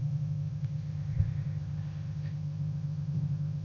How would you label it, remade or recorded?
remade